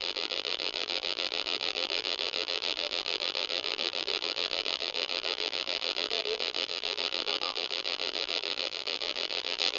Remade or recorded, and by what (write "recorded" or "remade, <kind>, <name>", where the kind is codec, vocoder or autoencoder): remade, vocoder, BigVGAN v2